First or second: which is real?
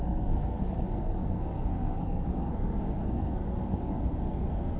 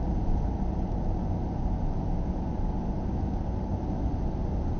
second